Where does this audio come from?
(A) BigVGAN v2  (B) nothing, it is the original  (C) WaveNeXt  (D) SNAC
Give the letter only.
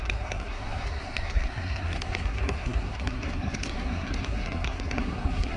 D